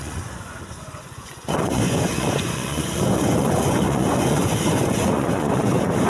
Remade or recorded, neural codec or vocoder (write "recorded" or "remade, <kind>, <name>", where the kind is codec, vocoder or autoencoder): remade, vocoder, Vocos